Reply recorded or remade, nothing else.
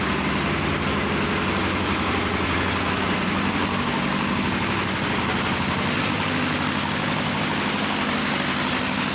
recorded